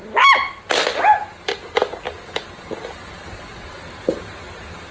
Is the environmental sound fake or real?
real